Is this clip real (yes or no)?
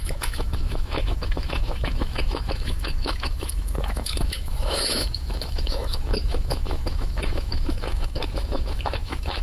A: no